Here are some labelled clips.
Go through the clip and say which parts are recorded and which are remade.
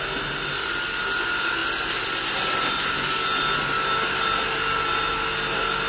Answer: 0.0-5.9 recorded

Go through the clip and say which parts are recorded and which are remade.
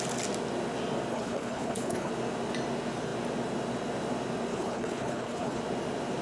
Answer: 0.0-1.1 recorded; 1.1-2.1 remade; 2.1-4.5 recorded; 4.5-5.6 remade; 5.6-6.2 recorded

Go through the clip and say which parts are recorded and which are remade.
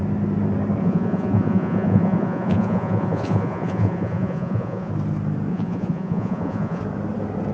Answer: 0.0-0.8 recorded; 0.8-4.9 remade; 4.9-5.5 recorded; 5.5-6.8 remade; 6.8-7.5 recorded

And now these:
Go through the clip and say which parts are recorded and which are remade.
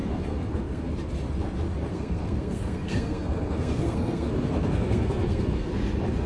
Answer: 0.0-0.9 remade; 0.9-1.9 recorded; 1.9-5.7 remade; 5.7-6.3 recorded